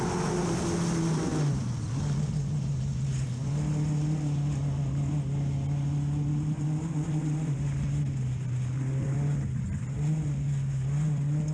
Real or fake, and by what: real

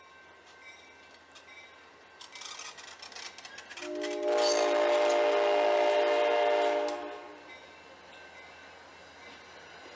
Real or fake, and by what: real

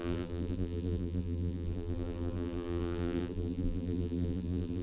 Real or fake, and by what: fake, vocoder, BigVGAN v2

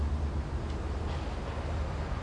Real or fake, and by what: real